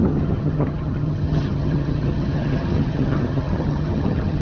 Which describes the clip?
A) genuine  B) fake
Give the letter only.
B